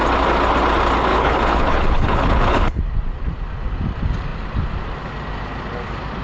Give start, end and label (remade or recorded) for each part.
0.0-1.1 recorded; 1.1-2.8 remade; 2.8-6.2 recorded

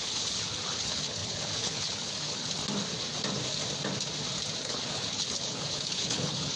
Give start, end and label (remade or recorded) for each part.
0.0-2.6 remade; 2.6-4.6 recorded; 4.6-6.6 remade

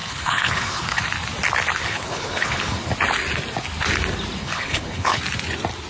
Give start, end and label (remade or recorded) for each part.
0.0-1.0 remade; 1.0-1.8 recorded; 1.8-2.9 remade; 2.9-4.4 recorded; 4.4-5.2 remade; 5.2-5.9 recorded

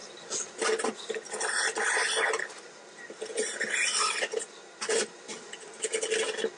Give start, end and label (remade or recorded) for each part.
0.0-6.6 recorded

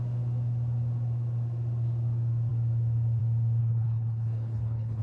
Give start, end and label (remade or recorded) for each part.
0.0-3.6 recorded; 3.6-5.0 remade